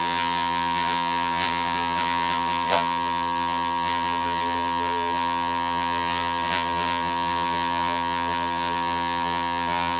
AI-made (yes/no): yes